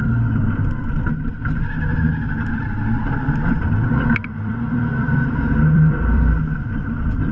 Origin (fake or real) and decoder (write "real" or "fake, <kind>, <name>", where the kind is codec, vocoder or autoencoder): fake, vocoder, BigVGAN v2